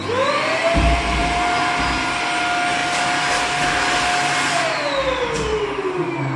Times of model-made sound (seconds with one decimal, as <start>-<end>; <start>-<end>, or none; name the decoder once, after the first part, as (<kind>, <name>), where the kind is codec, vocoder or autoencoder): 1.2-1.7 (vocoder, BigVGAN v2); 5.5-6.0